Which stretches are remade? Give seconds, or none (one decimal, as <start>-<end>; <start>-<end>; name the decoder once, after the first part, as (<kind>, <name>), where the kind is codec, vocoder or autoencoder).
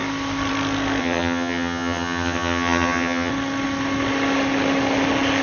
1.0-3.3 (vocoder, HiFi-GAN)